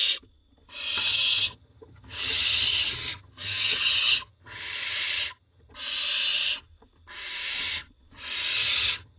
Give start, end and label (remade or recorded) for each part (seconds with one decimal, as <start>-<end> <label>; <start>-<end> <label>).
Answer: 0.0-1.1 recorded; 1.1-5.7 remade; 5.7-8.5 recorded; 8.5-9.2 remade